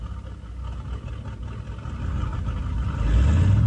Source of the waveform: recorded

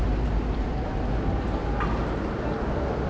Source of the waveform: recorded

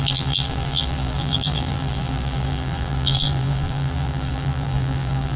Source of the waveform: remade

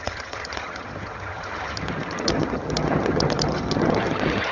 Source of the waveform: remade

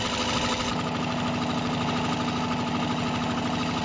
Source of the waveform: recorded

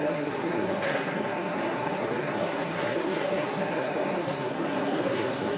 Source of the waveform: remade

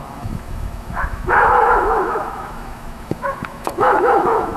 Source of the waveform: remade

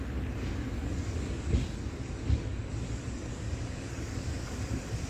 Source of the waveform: remade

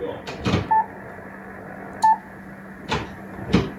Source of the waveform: recorded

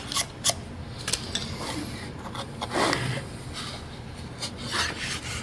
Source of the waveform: recorded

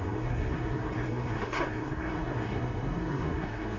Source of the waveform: remade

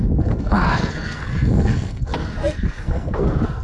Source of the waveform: remade